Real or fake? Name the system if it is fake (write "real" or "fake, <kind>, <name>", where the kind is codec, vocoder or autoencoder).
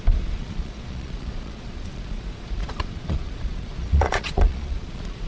fake, vocoder, Vocos